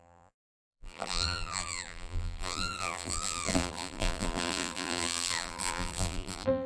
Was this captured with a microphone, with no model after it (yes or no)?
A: no